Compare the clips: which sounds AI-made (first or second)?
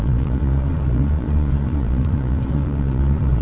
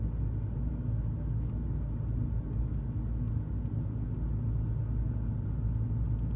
first